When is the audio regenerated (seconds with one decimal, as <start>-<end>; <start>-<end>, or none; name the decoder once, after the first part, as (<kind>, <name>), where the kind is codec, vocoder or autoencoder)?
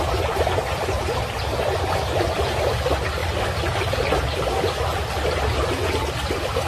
none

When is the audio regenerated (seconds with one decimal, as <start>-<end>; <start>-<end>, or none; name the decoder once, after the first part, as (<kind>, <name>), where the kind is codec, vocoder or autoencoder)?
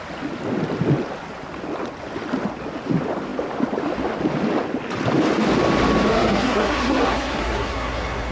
6.1-8.3 (codec, SNAC)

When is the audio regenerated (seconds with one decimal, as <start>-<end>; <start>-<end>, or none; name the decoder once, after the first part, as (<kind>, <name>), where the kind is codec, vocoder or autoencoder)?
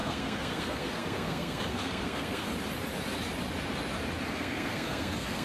0.0-2.5 (codec, SNAC); 4.3-5.4